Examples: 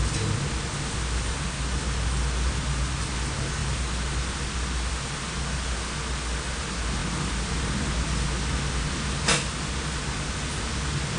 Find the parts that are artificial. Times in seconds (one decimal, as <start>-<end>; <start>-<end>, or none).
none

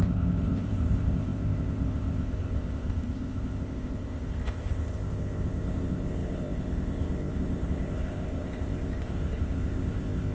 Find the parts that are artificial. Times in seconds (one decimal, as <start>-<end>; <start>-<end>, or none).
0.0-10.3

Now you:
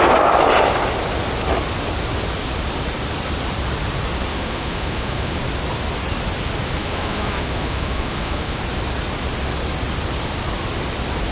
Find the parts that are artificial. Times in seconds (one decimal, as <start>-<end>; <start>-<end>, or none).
4.3-5.4; 6.8-8.6